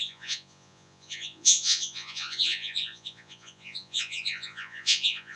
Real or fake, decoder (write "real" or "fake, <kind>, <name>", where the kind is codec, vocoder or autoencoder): fake, vocoder, Vocos